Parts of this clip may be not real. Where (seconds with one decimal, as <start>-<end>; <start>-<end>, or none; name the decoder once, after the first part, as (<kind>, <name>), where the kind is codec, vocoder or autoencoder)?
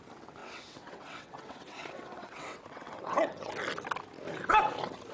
0.4-3.5 (vocoder, WaveNeXt)